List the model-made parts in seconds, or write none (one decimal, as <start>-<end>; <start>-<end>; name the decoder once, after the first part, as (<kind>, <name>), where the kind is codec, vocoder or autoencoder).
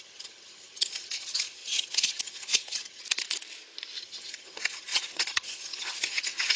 0.0-3.0 (vocoder, HiFi-GAN); 4.0-6.6